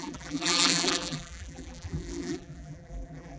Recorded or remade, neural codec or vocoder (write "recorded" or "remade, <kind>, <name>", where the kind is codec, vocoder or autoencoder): remade, vocoder, BigVGAN v2